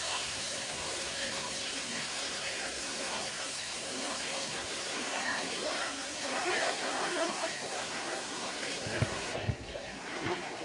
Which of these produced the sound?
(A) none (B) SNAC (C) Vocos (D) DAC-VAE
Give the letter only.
B